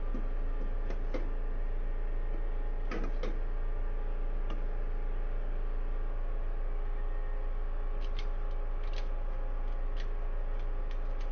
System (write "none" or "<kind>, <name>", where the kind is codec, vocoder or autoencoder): none